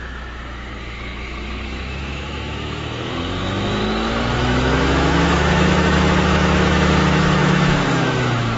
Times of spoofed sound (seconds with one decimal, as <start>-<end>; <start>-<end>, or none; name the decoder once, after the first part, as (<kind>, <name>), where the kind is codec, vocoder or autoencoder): 0.0-3.8 (autoencoder, DAC-VAE); 4.4-8.6